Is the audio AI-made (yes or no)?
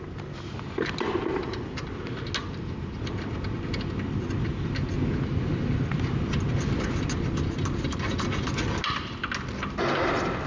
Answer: no